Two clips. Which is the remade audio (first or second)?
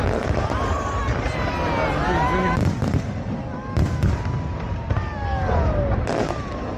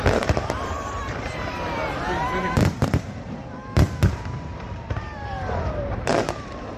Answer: second